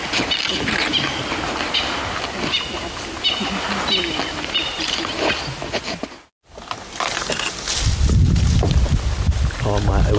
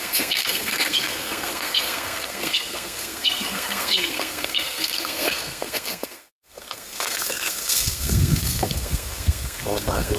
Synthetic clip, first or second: second